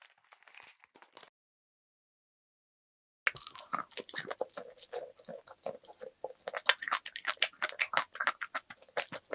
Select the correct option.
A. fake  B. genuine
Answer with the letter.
B